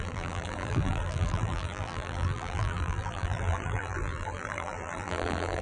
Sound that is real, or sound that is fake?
fake